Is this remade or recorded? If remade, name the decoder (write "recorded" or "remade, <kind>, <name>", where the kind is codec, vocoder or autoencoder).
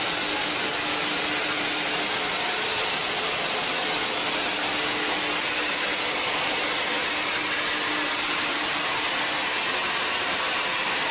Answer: recorded